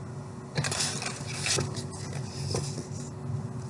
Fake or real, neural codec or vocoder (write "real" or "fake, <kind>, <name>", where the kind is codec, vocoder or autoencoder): real